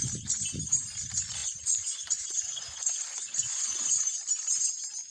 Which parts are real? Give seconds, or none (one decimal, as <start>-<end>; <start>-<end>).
0.0-1.4; 4.0-5.1